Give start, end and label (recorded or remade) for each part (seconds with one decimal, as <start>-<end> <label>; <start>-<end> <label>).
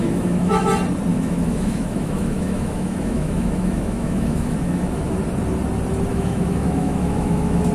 0.0-0.7 remade; 0.7-1.1 recorded; 1.1-5.2 remade; 5.2-6.1 recorded; 6.1-7.7 remade